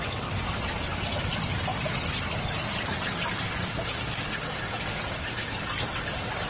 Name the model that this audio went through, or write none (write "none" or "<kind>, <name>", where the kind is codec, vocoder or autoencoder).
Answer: none